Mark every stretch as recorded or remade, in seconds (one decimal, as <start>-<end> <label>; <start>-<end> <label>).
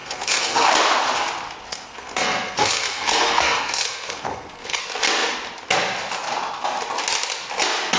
0.0-0.7 remade; 0.7-1.7 recorded; 1.7-4.8 remade; 4.8-8.0 recorded